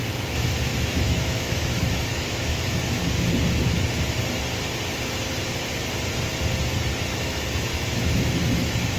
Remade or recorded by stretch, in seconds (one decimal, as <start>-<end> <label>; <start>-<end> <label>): 0.0-0.7 recorded; 0.7-3.0 remade; 3.0-7.1 recorded; 7.1-8.3 remade; 8.3-9.0 recorded